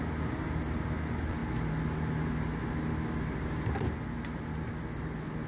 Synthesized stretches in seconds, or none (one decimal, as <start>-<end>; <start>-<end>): none